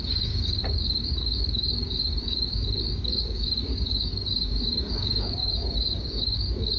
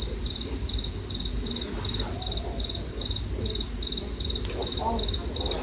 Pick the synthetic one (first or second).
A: first